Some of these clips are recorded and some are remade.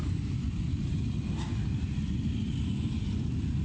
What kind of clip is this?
recorded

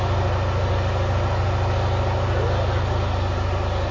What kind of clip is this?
recorded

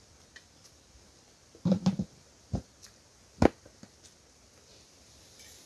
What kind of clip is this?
recorded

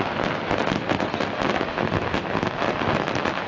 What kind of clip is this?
recorded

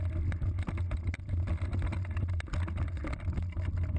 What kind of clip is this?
recorded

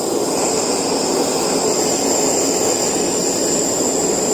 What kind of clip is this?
recorded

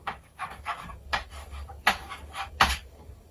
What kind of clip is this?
remade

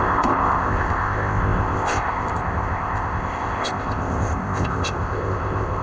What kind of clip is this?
remade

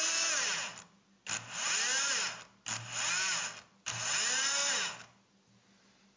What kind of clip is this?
recorded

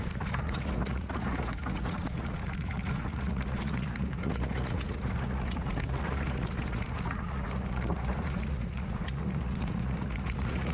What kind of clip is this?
remade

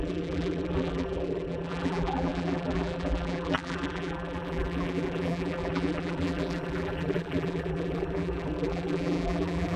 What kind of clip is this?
remade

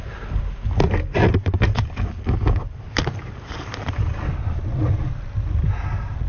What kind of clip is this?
recorded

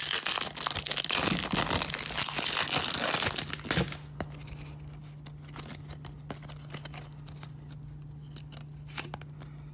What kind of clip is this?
recorded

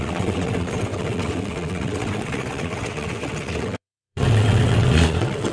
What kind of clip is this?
remade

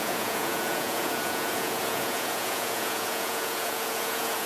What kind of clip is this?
remade